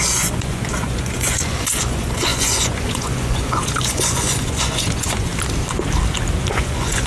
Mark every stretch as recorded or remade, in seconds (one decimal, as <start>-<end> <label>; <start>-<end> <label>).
0.0-5.3 remade; 5.3-6.5 recorded; 6.5-7.1 remade